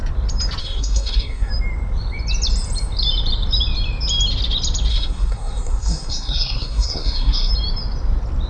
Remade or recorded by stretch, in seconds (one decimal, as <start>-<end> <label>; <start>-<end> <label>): 0.0-0.6 recorded; 0.6-1.5 remade; 1.5-4.9 recorded; 4.9-7.5 remade; 7.5-8.5 recorded